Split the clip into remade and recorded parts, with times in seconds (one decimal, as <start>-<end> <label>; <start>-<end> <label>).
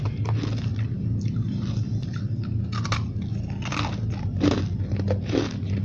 0.0-5.8 recorded